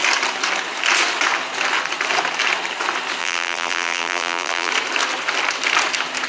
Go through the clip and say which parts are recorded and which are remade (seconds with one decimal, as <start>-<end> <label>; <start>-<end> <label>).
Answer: 0.0-3.2 recorded; 3.2-4.7 remade; 4.7-6.3 recorded